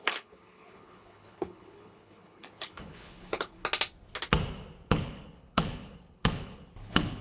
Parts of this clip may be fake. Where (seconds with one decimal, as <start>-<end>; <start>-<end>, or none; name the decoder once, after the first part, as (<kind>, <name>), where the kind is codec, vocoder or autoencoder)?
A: 0.0-3.6 (codec, HILCodec); 4.9-7.2